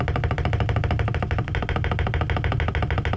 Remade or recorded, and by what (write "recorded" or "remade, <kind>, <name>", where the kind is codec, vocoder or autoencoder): recorded